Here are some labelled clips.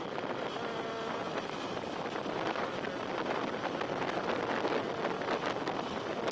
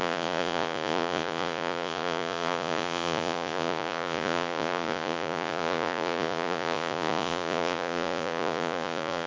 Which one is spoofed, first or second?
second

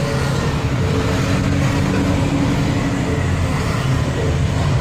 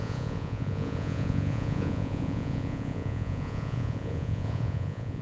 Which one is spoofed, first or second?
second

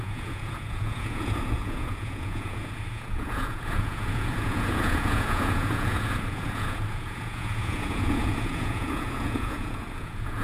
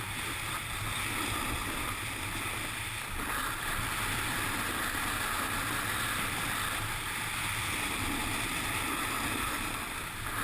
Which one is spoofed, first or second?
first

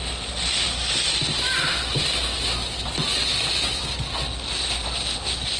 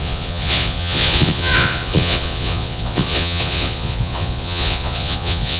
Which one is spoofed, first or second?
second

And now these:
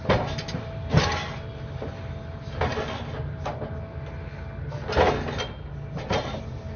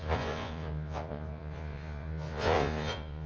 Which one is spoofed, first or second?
second